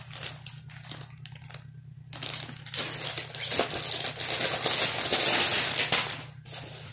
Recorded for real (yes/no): yes